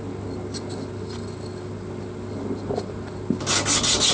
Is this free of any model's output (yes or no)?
yes